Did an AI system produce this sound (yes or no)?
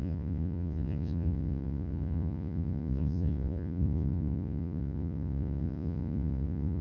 yes